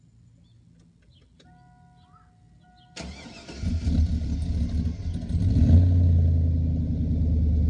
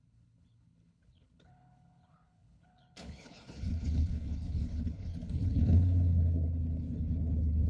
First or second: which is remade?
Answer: second